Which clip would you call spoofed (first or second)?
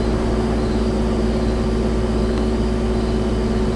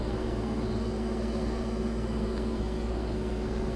second